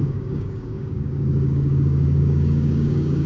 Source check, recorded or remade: remade